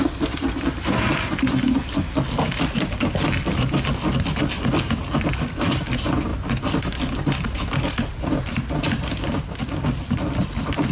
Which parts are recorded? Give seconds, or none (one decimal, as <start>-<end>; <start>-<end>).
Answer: 0.0-10.9